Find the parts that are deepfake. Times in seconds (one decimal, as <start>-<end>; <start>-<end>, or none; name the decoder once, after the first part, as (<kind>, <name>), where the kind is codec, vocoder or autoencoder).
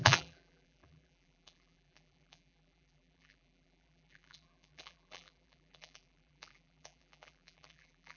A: 0.0-8.2 (vocoder, BigVGAN v2)